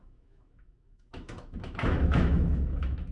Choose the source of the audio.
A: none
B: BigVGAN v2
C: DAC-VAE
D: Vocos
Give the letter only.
C